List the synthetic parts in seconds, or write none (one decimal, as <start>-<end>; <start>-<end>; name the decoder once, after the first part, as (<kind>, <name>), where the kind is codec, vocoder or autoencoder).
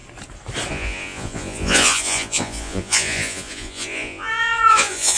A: 0.7-5.2 (vocoder, Vocos)